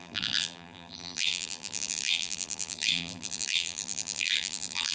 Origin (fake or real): fake